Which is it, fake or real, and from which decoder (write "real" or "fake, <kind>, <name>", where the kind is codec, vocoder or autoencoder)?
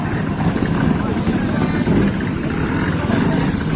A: real